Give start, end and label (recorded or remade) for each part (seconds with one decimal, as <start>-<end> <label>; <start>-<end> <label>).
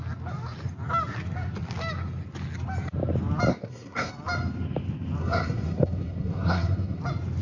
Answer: 0.0-3.5 recorded; 3.5-4.1 remade; 4.1-5.2 recorded; 5.2-7.0 remade; 7.0-7.4 recorded